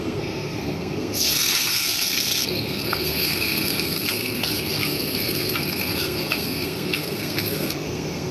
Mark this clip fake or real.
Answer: fake